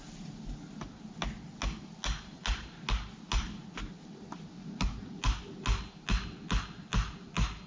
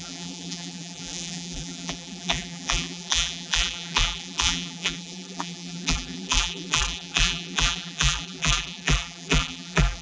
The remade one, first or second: second